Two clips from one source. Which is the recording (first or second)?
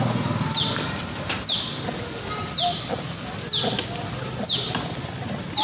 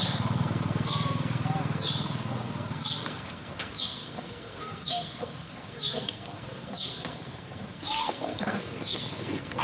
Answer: first